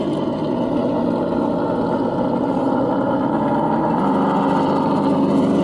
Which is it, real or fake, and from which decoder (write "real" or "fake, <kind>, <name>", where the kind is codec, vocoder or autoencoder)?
real